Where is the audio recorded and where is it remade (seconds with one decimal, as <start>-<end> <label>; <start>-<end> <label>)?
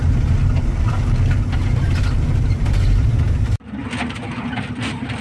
0.0-0.4 remade; 0.4-1.9 recorded; 1.9-3.8 remade; 3.8-4.4 recorded; 4.4-5.2 remade